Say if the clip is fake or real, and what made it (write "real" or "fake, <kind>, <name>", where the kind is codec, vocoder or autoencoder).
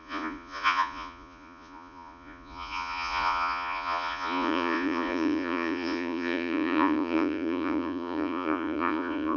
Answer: fake, vocoder, Vocos